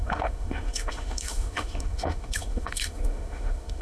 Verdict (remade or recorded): remade